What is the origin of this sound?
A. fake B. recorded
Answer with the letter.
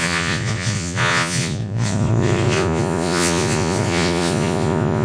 A